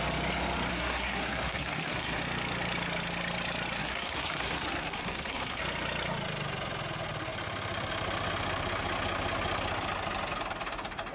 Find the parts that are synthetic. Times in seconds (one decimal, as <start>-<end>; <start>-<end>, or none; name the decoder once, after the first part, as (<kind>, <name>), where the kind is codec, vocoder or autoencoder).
0.7-2.2 (codec, SNAC); 3.8-5.6